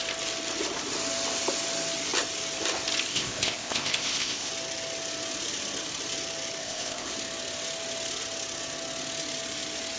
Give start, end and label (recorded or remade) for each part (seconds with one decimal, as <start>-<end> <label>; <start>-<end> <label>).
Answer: 0.0-3.1 recorded; 3.1-4.5 remade; 4.5-6.6 recorded; 6.6-7.1 remade; 7.1-10.0 recorded